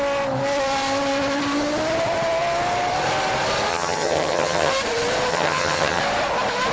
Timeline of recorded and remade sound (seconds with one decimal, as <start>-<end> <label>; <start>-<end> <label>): 0.0-3.7 recorded; 3.7-4.7 remade; 4.7-5.3 recorded; 5.3-6.0 remade; 6.0-6.7 recorded